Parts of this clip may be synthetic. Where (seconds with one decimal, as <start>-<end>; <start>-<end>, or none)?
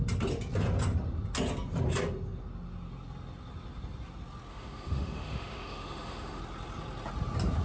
4.5-6.4